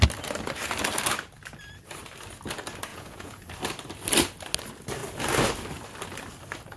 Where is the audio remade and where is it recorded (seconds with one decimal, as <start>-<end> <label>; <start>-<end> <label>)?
0.0-2.9 recorded; 2.9-3.5 remade; 3.5-6.8 recorded